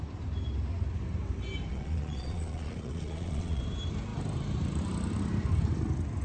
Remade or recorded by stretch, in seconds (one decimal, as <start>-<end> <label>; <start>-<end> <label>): 0.0-1.7 recorded; 1.7-3.6 remade; 3.6-6.2 recorded